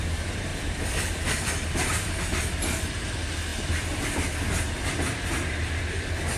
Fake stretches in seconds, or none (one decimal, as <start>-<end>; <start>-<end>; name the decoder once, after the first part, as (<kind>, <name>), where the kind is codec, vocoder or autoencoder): 0.5-2.2 (vocoder, BigVGAN v2)